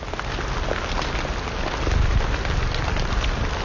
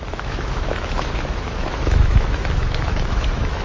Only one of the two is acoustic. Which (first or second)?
first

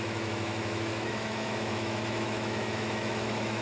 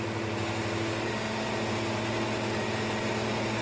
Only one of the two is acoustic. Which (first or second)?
second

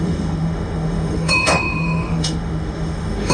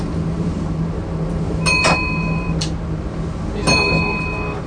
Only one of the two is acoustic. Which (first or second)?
second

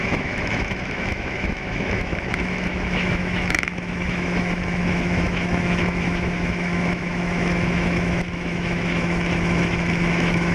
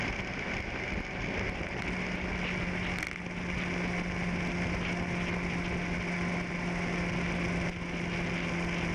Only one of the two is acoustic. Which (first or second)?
second